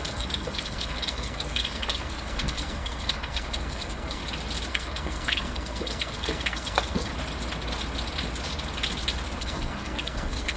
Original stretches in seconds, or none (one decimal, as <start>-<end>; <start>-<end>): 4.2-4.7; 7.1-9.4